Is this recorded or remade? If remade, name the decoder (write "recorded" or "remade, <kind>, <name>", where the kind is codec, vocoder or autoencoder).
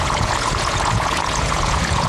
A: remade, vocoder, Vocos